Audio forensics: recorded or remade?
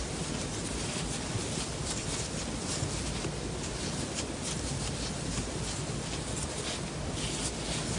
recorded